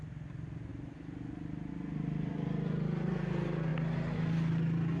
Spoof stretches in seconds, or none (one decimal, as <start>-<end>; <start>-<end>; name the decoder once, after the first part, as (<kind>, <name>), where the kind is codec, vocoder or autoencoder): none